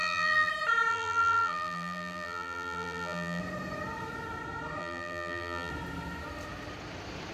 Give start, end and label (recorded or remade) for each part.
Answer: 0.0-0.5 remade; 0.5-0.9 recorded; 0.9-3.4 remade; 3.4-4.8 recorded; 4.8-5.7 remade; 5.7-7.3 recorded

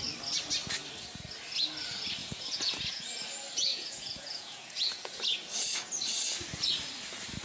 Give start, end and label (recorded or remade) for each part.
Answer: 0.0-2.2 recorded; 2.2-2.8 remade; 2.8-3.7 recorded; 3.7-5.2 remade; 5.2-7.4 recorded

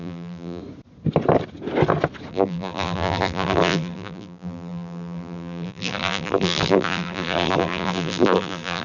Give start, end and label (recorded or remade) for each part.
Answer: 0.0-0.6 remade; 0.6-2.3 recorded; 2.3-8.8 remade